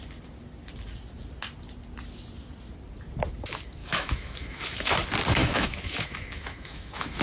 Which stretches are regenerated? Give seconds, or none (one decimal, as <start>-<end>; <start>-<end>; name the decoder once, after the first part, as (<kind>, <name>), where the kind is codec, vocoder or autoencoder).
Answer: 3.8-4.9 (autoencoder, DAC-VAE); 5.4-7.2